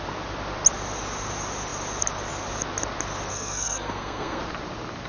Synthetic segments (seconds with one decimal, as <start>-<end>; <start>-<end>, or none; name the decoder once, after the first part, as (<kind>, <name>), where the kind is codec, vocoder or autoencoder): 3.3-4.4 (codec, SNAC)